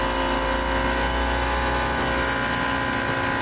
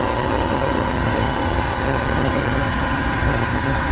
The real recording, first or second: first